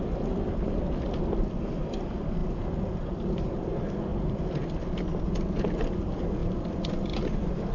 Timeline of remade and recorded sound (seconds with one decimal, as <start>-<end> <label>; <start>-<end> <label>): 0.0-4.1 recorded; 4.1-4.6 remade; 4.6-6.4 recorded; 6.4-7.7 remade

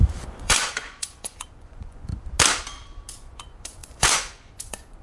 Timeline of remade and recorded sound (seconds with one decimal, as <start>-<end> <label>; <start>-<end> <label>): 0.0-2.1 remade; 2.1-3.1 recorded; 3.1-5.0 remade

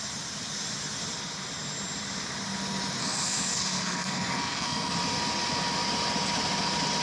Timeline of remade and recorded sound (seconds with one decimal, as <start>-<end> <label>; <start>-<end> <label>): 0.0-3.0 recorded; 3.0-4.9 remade; 4.9-7.0 recorded

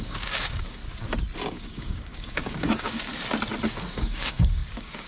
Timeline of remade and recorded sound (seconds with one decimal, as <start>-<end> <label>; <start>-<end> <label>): 0.0-0.8 remade; 0.8-1.5 recorded; 1.5-3.1 remade; 3.1-3.9 recorded; 3.9-5.1 remade

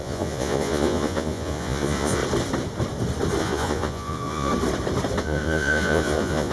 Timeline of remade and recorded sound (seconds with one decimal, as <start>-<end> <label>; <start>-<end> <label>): 0.0-2.2 remade; 2.2-3.4 recorded; 3.4-4.5 remade; 4.5-5.2 recorded; 5.2-6.5 remade

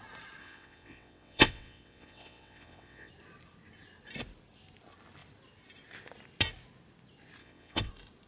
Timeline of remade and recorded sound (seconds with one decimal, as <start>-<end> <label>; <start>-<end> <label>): 0.0-0.4 recorded; 0.4-3.1 remade; 3.1-7.4 recorded; 7.4-7.9 remade; 7.9-8.3 recorded

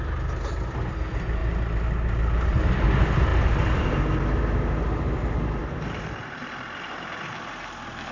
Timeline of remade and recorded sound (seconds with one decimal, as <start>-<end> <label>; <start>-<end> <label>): 0.0-1.4 recorded; 1.4-2.7 remade; 2.7-5.6 recorded; 5.6-7.2 remade; 7.2-8.1 recorded

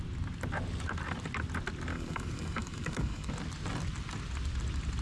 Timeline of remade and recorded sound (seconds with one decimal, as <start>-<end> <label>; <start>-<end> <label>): 0.0-1.9 recorded; 1.9-3.3 remade; 3.3-5.0 recorded